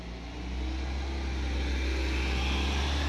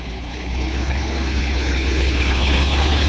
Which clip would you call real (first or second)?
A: first